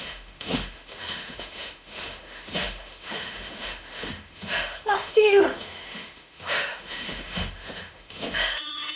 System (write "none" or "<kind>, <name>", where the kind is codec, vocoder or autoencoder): autoencoder, DAC-VAE